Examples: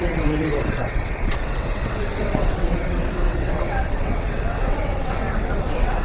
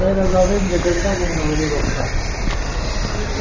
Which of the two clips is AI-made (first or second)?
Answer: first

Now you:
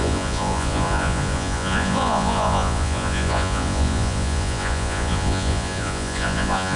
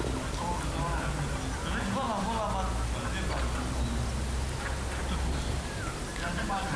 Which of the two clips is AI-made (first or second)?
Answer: first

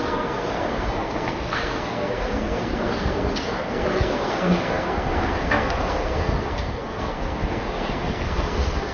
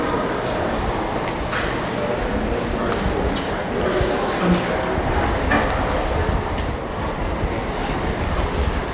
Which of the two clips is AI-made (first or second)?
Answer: first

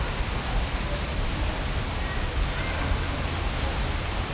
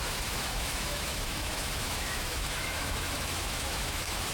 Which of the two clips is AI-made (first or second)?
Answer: second